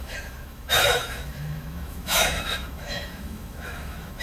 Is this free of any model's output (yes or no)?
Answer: no